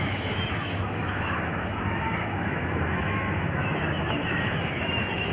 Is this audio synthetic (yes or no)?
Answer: yes